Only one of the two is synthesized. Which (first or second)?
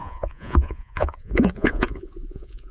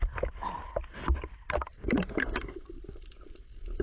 first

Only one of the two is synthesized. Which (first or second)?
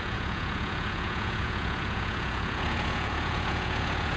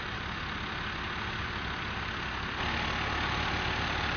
first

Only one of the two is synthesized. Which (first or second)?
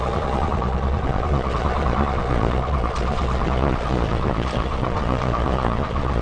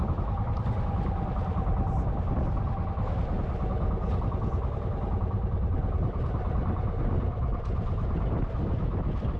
first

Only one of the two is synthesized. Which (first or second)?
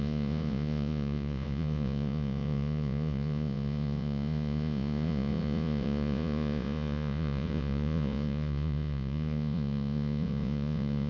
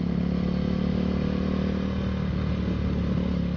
first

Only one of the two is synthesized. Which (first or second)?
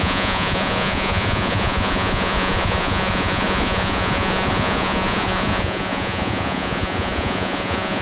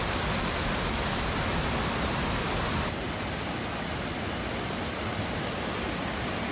first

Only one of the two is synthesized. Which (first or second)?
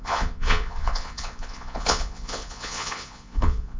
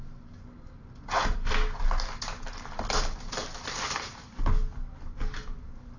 first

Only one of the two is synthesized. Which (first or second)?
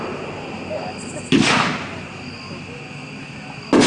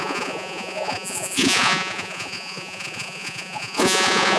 second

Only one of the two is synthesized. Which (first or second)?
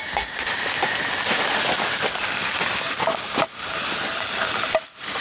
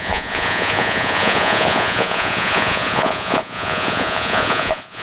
second